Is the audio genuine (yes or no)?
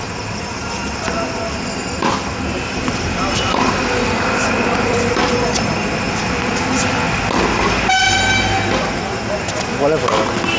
yes